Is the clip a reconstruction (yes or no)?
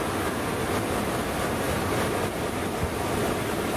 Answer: no